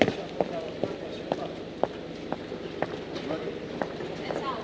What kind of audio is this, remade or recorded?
recorded